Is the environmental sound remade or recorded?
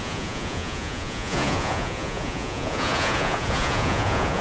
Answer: remade